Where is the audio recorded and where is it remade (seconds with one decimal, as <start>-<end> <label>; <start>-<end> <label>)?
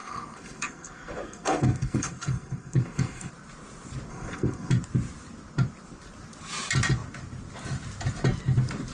0.0-3.3 remade; 3.3-4.1 recorded; 4.1-4.7 remade; 4.7-8.9 recorded